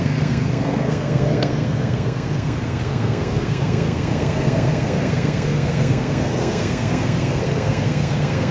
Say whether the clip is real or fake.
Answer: fake